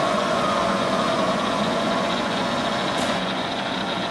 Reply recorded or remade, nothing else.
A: remade